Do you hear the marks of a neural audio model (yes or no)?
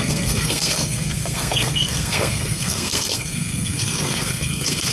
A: yes